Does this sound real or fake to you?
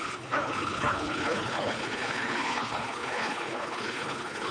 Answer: fake